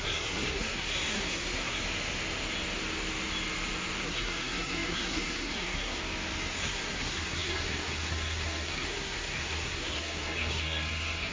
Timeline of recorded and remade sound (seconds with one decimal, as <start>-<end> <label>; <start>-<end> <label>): 0.0-1.8 remade; 1.8-4.0 recorded; 4.0-6.0 remade; 6.0-6.6 recorded; 6.6-11.3 remade